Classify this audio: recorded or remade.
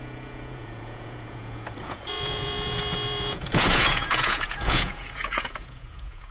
remade